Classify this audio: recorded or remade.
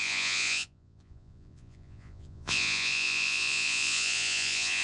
remade